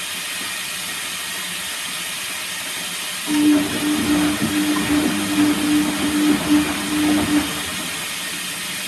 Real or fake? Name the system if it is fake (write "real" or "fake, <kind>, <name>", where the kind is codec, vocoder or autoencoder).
real